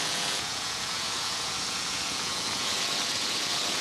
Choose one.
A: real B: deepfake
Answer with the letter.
B